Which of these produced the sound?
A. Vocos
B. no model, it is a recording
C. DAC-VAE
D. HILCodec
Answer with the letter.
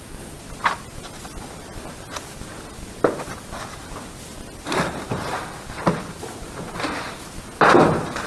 B